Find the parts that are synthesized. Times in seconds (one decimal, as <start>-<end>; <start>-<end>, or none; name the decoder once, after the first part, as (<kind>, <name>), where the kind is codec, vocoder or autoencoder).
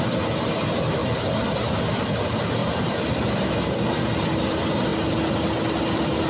none